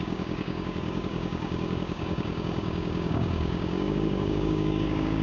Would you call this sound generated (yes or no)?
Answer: yes